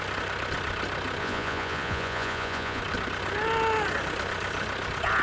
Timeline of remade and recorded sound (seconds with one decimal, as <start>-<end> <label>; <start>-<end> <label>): 0.0-1.2 recorded; 1.2-2.8 remade; 2.8-5.2 recorded